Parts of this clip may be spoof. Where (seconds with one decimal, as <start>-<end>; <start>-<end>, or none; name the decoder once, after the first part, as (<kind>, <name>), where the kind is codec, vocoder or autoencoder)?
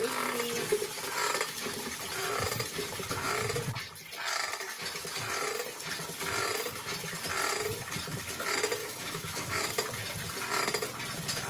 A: 8.8-9.7 (autoencoder, DAC-VAE)